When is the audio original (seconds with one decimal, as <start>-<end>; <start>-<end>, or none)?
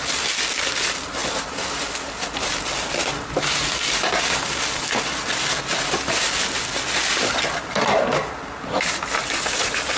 0.0-10.0